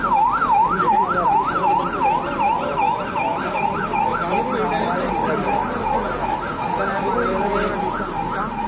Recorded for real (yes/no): yes